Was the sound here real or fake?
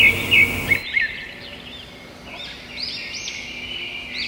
real